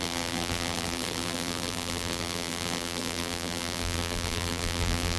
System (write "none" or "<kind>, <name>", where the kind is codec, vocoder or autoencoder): vocoder, BigVGAN v2